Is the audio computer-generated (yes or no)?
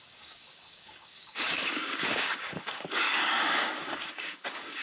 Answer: yes